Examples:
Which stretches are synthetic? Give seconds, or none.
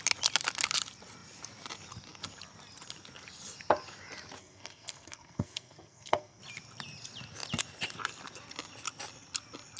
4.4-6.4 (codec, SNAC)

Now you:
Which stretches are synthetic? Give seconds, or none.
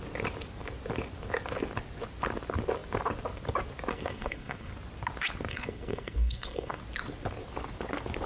3.9-4.7 (codec, SNAC); 5.5-6.8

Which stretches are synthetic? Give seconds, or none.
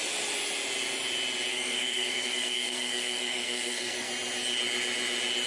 1.5-4.1 (codec, SNAC)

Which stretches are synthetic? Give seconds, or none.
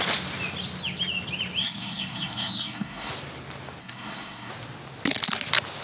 1.6-3.1 (codec, SNAC); 3.8-4.5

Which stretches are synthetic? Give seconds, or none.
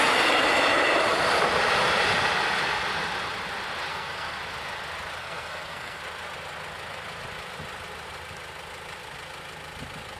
3.9-4.4 (codec, SNAC); 5.2-6.0